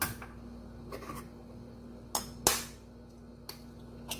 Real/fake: real